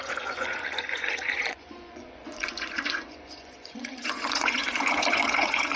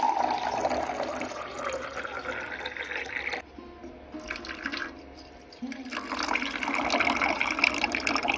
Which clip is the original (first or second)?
second